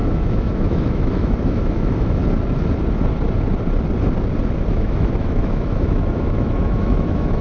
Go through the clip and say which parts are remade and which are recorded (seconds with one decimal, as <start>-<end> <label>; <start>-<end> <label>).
0.0-2.2 remade; 2.2-4.7 recorded; 4.7-7.4 remade